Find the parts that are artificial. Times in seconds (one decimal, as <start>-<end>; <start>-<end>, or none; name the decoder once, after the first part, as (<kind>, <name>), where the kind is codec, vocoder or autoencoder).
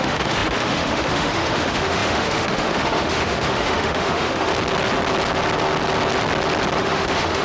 0.0-4.5 (autoencoder, DAC-VAE); 6.8-7.4